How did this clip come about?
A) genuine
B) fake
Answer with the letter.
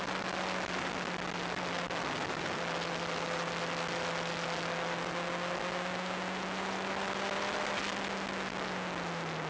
A